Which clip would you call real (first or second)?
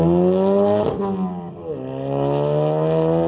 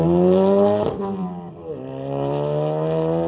first